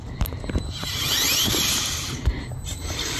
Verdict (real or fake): fake